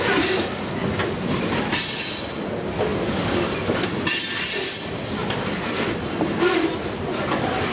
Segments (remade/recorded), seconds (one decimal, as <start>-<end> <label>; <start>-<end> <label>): 0.0-7.7 recorded